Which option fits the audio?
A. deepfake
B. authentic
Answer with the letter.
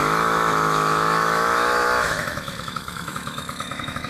A